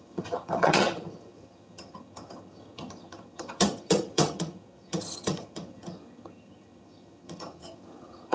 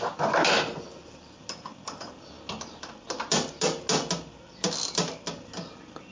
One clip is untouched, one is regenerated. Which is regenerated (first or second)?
first